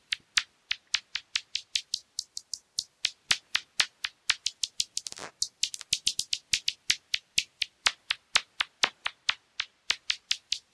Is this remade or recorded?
recorded